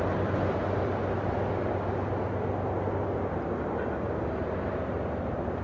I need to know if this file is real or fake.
real